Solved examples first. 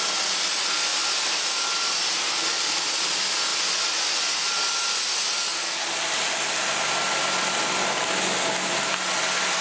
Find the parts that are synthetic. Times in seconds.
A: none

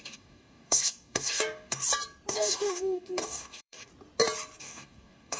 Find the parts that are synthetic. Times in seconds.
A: 0.0-1.8 (codec, DAC); 2.3-3.9; 4.6-5.4

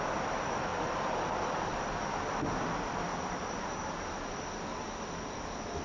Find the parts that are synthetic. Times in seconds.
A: 3.1-4.2 (vocoder, BigVGAN v2)

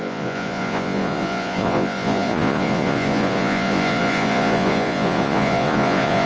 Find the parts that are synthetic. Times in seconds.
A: 0.0-6.3 (vocoder, Vocos)

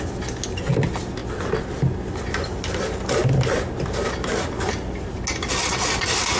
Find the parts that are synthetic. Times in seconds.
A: none